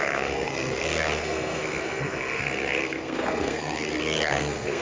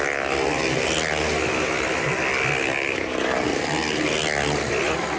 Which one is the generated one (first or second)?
first